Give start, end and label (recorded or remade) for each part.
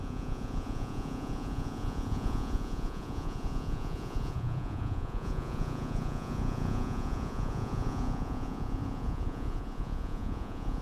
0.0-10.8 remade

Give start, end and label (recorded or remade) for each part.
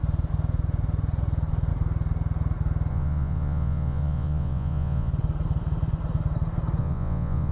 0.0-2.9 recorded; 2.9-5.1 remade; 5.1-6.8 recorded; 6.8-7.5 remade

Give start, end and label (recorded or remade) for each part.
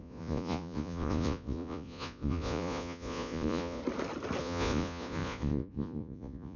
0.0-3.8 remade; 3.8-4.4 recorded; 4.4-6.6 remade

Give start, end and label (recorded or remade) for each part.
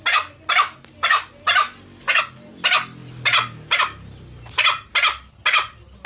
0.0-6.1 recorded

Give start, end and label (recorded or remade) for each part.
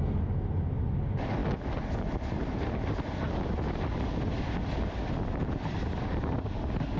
0.0-7.0 recorded